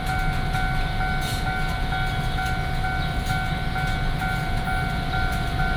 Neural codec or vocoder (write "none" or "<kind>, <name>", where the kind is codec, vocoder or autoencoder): none